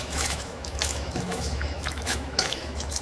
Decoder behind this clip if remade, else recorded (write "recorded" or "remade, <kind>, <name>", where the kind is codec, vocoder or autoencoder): remade, autoencoder, DAC-VAE